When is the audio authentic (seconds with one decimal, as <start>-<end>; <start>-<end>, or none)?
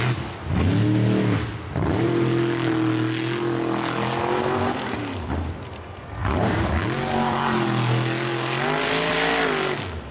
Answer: 0.0-6.2; 6.7-10.1